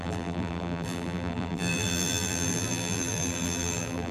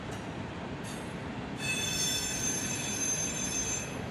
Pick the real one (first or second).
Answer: second